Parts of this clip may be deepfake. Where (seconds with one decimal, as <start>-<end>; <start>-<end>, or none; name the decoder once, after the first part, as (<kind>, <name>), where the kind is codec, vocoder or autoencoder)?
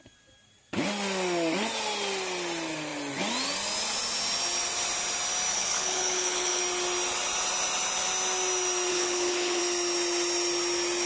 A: 5.5-6.6 (codec, HILCodec); 8.9-9.6